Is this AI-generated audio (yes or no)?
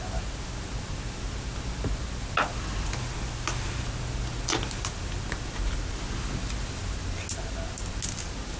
no